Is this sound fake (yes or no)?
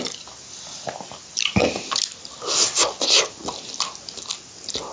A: no